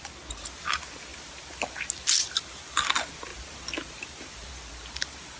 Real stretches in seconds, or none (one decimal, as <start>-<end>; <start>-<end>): 0.0-5.4